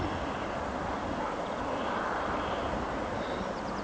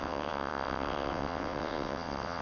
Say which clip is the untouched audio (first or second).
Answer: first